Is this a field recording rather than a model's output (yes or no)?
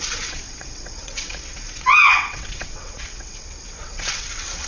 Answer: no